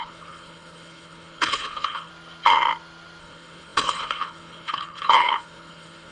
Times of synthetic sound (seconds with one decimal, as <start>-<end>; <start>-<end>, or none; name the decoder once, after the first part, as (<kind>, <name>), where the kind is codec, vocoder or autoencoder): 0.0-2.1 (codec, HILCodec); 3.2-6.1